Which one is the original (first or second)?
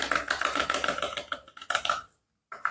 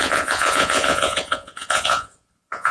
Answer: first